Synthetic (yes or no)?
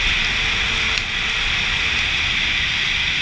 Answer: no